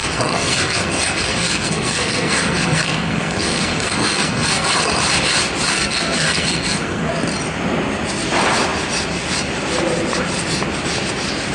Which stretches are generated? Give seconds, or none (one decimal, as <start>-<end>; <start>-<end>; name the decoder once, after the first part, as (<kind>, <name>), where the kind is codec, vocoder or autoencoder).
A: 0.0-4.7 (codec, SNAC); 5.7-7.1